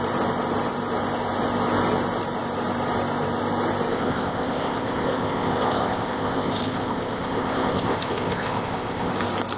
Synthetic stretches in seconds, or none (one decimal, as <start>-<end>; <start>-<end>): 3.9-9.1